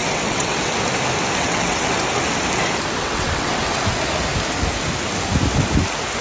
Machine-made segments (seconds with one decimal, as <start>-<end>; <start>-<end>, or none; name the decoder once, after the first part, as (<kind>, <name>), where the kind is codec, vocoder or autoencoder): 0.0-0.7 (vocoder, WaveNeXt); 1.4-2.0; 3.0-3.6